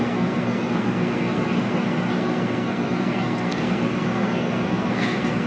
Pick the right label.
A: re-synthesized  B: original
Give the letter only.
A